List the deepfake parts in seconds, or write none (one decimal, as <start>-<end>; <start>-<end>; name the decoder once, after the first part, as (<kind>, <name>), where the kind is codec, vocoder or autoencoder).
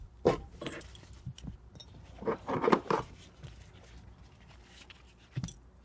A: none